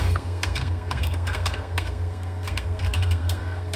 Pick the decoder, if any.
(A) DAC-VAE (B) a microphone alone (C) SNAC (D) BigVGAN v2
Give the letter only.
C